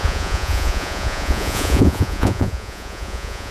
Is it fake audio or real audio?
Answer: fake